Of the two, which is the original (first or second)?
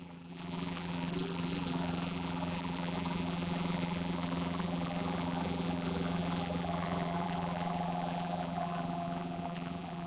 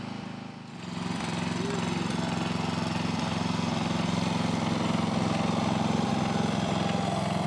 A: second